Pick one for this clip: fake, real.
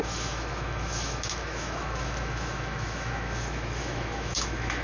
fake